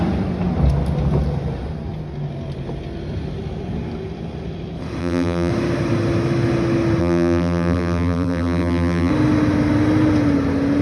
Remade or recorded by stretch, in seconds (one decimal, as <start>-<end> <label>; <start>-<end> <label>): 0.0-5.0 recorded; 5.0-5.5 remade; 5.5-7.0 recorded; 7.0-9.1 remade; 9.1-10.8 recorded